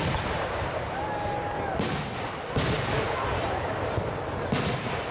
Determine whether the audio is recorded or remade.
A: recorded